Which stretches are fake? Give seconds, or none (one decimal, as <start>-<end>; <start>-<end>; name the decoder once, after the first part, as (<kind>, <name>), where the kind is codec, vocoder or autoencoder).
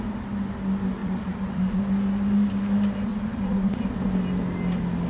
1.0-1.8 (vocoder, Vocos); 3.1-3.8